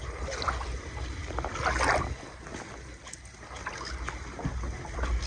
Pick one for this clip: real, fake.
real